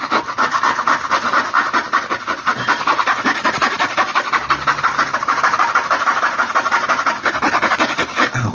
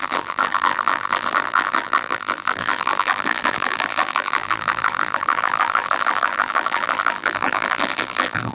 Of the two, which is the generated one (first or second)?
second